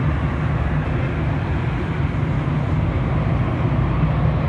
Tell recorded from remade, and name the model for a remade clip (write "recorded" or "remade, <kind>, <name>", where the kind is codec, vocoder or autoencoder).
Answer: recorded